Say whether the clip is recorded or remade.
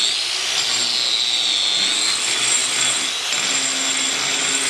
recorded